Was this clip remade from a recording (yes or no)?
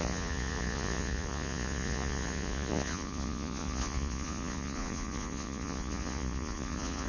yes